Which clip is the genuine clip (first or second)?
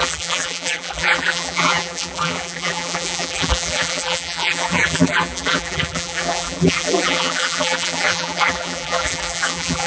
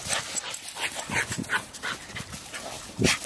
second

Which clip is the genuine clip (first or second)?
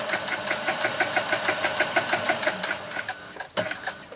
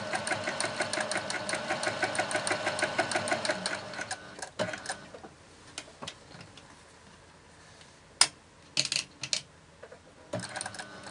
second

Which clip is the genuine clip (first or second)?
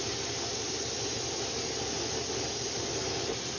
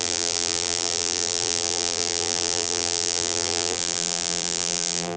first